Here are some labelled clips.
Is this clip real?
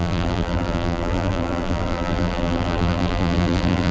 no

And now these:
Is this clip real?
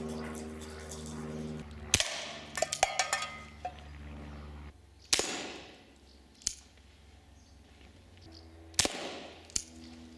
yes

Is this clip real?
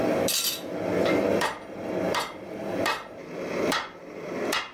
no